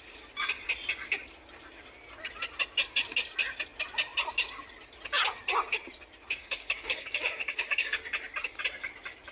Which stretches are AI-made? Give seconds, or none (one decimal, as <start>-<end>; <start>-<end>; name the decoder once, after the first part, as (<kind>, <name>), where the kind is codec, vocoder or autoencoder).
6.4-8.0 (codec, DAC)

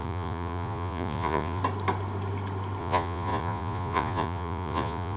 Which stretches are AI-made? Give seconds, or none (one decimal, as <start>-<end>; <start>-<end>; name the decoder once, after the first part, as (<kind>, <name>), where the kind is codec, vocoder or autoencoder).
0.0-1.6 (vocoder, Vocos); 2.8-5.2